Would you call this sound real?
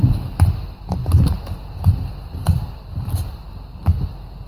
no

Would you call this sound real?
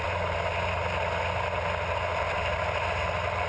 yes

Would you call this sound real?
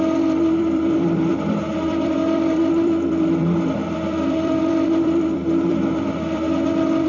no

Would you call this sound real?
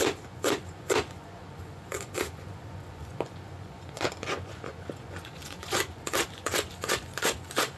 no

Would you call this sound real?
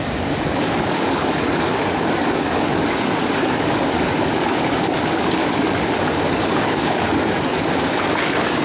no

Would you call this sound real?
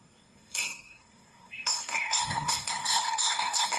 no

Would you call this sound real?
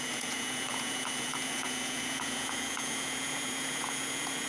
no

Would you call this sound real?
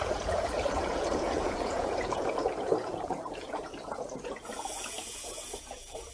no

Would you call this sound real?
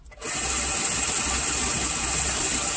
yes